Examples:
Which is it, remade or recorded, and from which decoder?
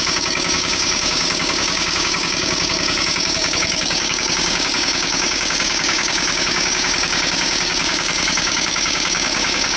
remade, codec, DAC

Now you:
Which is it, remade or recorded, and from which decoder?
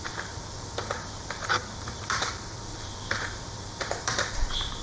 remade, vocoder, BigVGAN v2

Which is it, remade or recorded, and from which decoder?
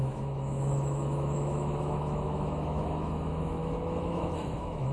remade, autoencoder, DAC-VAE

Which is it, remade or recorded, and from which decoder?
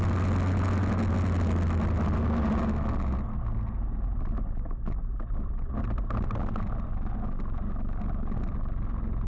recorded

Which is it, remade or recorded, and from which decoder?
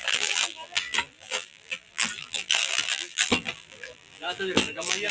remade, vocoder, BigVGAN v2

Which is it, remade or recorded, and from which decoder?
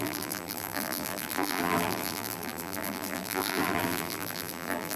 remade, vocoder, BigVGAN v2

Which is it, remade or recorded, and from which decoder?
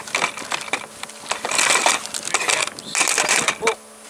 recorded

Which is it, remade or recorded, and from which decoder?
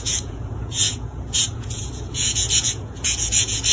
remade, vocoder, Vocos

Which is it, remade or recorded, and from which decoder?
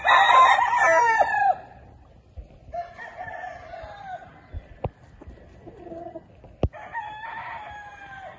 recorded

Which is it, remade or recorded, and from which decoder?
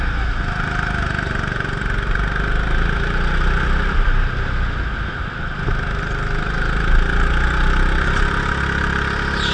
recorded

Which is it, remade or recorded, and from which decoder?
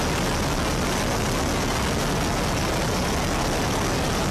recorded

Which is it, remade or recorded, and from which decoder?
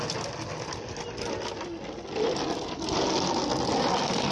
recorded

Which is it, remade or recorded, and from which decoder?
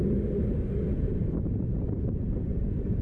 recorded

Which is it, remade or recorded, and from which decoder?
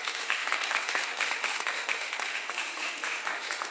remade, autoencoder, DAC-VAE